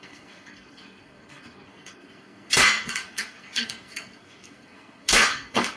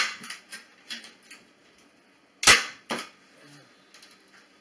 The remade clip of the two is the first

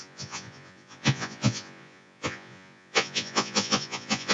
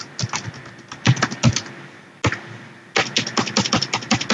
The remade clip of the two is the first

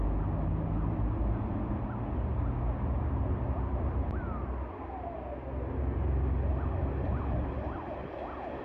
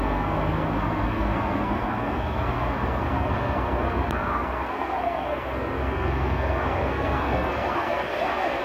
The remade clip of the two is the second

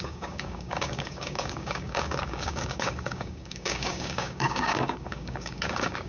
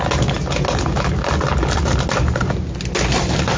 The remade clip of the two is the first